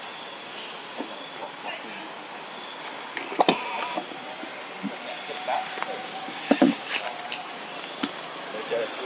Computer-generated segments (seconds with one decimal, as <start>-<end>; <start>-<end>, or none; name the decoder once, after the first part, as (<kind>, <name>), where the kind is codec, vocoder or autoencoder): 6.0-6.9 (codec, DAC)